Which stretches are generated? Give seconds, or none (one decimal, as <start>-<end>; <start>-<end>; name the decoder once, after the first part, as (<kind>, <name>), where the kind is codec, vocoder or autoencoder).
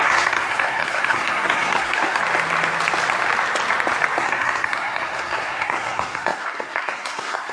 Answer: 0.0-2.2 (codec, SNAC); 4.2-7.5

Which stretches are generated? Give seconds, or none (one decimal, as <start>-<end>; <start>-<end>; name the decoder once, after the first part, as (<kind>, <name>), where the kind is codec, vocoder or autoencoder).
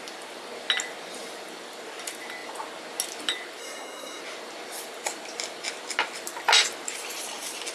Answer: 3.6-4.2 (codec, SNAC)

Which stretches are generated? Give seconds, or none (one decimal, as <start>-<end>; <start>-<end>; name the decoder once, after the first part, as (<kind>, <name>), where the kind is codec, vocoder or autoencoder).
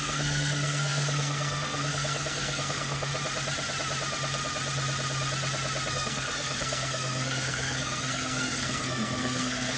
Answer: 0.0-3.1 (codec, SNAC); 5.9-9.8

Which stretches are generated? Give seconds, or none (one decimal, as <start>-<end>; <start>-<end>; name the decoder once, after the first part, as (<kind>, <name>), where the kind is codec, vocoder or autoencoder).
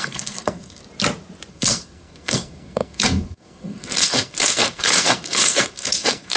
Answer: 0.0-0.8 (codec, SNAC); 1.5-6.4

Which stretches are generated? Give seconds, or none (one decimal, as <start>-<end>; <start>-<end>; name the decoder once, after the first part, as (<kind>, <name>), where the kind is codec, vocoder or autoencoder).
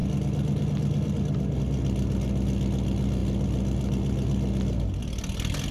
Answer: none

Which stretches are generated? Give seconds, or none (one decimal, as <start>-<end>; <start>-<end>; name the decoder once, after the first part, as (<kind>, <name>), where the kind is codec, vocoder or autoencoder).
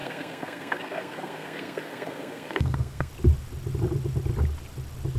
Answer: 0.0-3.1 (codec, SNAC)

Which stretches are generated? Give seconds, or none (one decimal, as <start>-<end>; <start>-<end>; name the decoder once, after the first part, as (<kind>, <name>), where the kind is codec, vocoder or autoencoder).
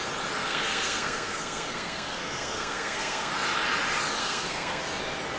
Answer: 0.4-3.3 (codec, SNAC); 4.2-4.8